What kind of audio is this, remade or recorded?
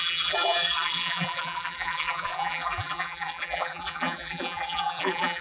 remade